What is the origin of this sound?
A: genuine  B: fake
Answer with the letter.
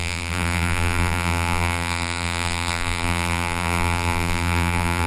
B